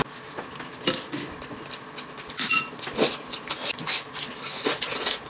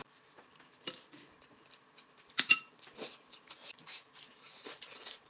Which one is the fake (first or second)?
second